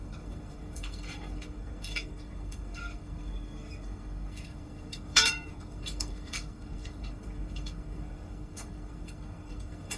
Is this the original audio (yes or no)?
no